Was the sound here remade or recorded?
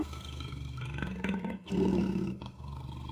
remade